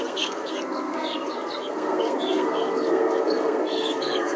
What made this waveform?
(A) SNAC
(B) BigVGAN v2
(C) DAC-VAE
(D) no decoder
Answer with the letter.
A